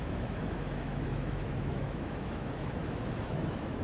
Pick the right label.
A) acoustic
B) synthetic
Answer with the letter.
B